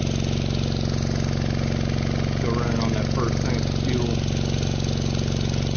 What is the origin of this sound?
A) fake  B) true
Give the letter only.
B